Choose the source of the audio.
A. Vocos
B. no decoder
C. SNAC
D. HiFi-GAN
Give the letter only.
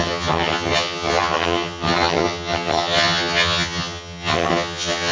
D